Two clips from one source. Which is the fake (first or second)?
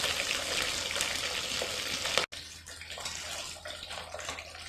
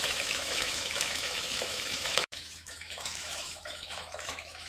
second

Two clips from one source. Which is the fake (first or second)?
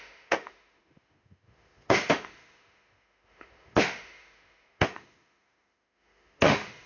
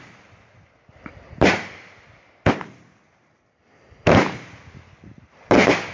first